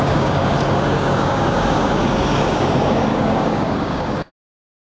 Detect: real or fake fake